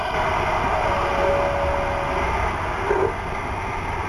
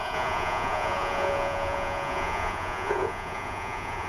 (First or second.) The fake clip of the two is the second